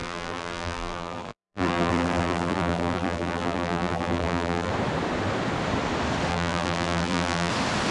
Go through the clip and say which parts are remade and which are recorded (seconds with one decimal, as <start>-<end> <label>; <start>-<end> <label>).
0.0-4.7 remade; 4.7-6.3 recorded; 6.3-7.5 remade; 7.5-7.9 recorded